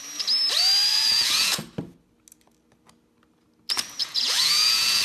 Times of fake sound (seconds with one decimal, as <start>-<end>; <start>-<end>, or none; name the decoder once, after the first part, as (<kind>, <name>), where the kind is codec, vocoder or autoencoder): 0.9-1.6 (vocoder, Vocos); 4.0-5.0